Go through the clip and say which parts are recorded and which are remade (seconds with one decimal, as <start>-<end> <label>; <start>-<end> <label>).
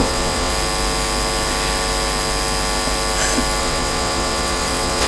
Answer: 0.0-0.5 remade; 0.5-3.6 recorded; 3.6-5.1 remade